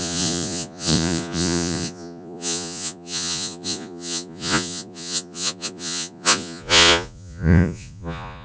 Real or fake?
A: fake